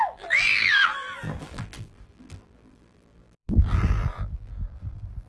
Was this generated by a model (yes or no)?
yes